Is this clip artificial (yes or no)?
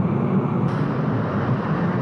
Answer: yes